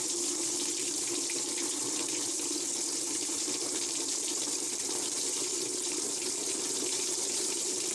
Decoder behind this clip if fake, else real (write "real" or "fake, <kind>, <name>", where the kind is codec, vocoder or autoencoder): fake, vocoder, BigVGAN v2